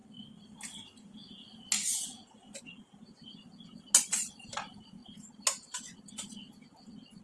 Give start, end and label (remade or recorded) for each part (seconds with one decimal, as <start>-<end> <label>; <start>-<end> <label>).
0.0-7.2 recorded